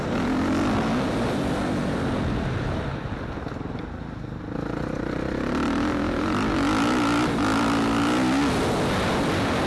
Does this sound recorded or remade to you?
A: recorded